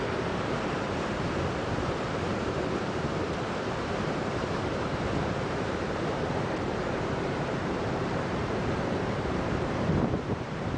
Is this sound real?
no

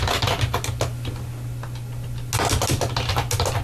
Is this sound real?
yes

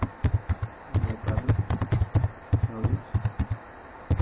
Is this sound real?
no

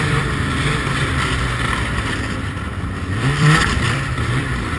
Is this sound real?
no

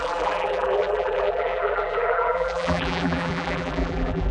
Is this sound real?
no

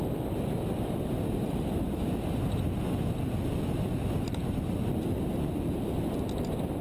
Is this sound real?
yes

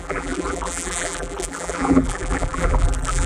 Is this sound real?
no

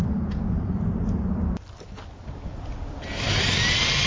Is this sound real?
yes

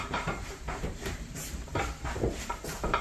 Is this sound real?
no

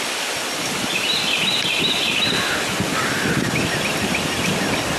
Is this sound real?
yes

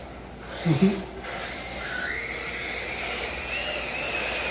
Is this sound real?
yes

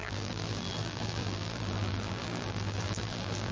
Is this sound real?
no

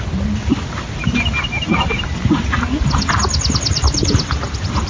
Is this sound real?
yes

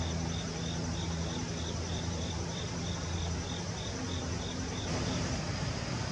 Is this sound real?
no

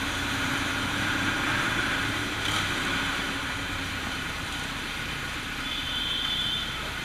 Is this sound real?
no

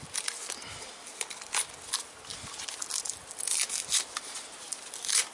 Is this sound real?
yes